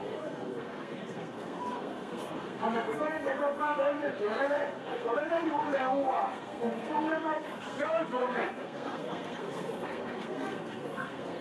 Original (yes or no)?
no